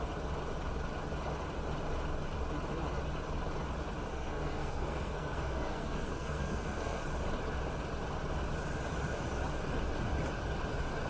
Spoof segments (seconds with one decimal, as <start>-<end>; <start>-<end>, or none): 4.1-7.0